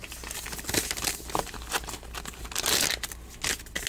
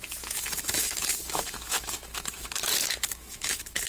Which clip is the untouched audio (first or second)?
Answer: first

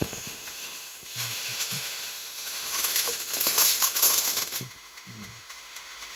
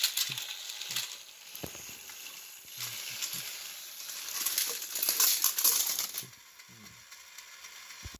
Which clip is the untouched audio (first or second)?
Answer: second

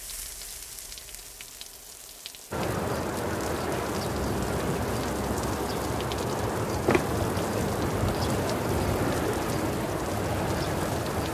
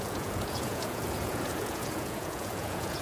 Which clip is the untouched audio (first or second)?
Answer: first